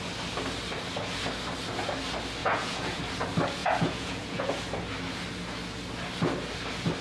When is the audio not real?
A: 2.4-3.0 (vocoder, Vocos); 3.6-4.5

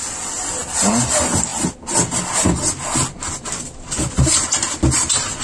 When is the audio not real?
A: none

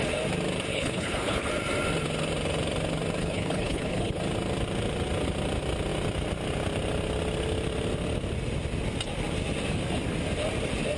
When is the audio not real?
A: 0.7-1.5 (codec, HILCodec); 3.2-4.2

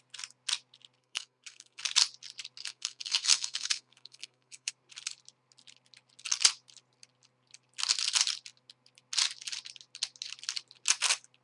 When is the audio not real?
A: 1.0-1.8 (codec, SNAC); 2.6-4.7

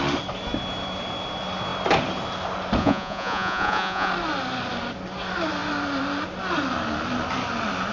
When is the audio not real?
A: 2.8-4.1 (vocoder, Vocos)

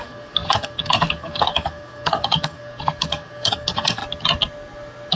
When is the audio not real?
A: 0.0-4.0 (codec, DAC)